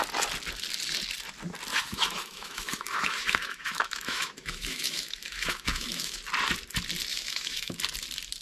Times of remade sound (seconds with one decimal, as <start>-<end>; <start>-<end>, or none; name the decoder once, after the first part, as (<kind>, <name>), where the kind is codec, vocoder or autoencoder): 1.7-6.2 (autoencoder, DAC-VAE); 7.1-7.8